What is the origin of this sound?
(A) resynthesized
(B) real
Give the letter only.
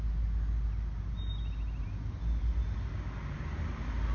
B